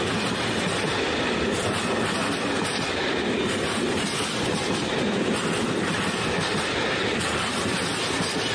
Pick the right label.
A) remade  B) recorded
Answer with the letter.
B